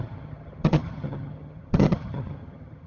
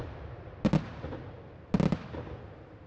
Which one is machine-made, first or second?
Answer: first